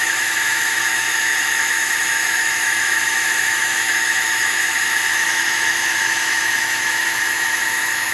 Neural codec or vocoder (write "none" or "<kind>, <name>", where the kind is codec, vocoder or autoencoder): autoencoder, DAC-VAE